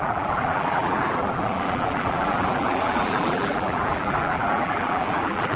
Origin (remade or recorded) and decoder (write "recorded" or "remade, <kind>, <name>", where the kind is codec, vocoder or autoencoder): remade, vocoder, BigVGAN v2